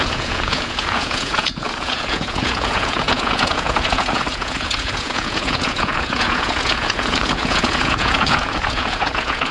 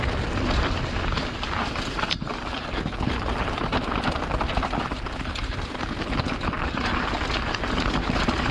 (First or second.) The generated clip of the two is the first